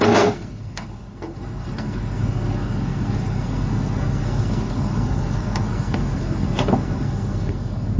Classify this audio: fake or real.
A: fake